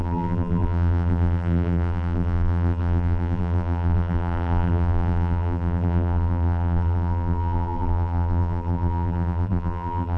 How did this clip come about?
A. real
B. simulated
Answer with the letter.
B